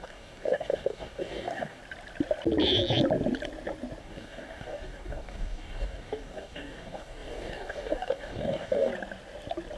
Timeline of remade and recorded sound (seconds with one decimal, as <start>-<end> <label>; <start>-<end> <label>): 0.0-1.8 remade; 1.8-4.0 recorded; 4.0-8.9 remade; 8.9-9.8 recorded